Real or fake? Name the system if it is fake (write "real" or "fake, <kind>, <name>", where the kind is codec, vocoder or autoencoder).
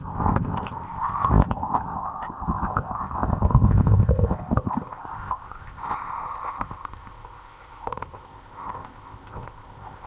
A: fake, codec, ZipCodec